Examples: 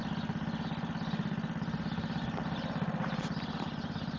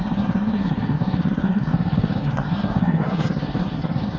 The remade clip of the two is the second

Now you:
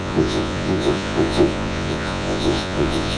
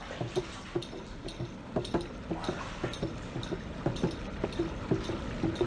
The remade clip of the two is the first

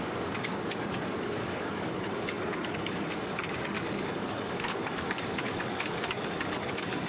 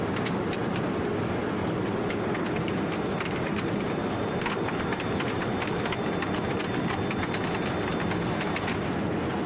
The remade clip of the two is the first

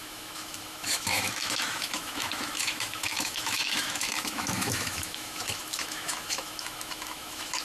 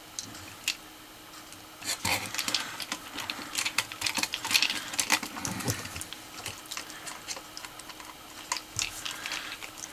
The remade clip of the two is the first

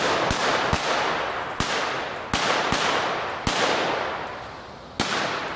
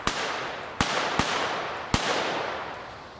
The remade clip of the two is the second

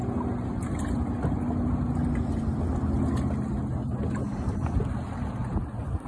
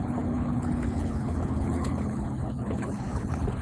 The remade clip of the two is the second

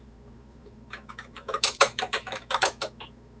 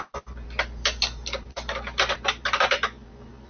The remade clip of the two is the first